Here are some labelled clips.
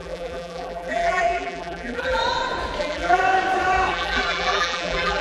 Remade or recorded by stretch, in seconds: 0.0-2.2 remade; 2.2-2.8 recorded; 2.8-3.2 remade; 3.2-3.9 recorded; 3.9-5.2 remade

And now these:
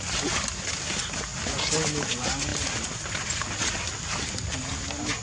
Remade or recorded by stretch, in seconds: 0.0-5.2 recorded